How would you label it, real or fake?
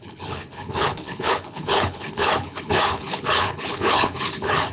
fake